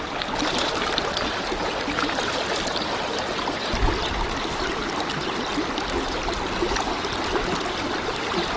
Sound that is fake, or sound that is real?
real